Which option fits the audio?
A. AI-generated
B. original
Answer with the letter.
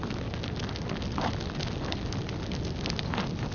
B